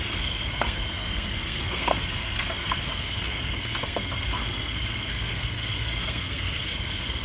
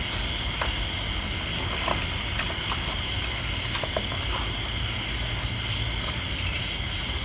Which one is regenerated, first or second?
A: first